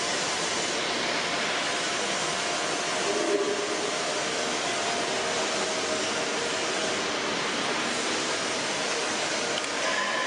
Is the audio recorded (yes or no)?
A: yes